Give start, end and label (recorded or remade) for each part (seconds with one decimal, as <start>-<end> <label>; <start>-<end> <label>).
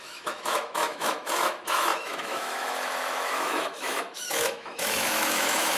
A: 0.0-5.8 remade